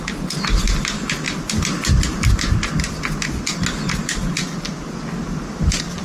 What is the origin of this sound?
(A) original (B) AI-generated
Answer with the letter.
A